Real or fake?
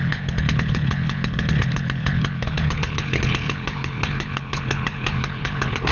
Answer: fake